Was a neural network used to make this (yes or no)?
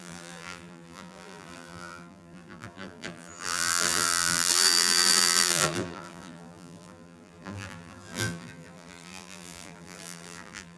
yes